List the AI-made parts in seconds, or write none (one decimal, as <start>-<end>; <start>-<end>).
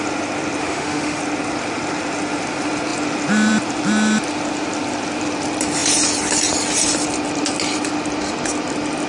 0.6-1.2